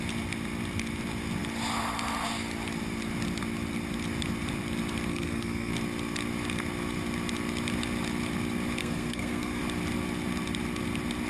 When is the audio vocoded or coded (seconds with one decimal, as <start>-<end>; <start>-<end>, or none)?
5.1-5.7; 8.8-9.6